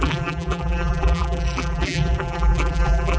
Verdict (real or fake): fake